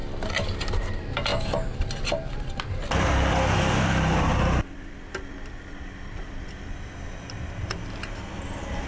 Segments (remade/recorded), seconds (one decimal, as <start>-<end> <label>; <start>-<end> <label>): 0.0-0.8 remade; 0.8-1.3 recorded; 1.3-6.6 remade; 6.6-8.9 recorded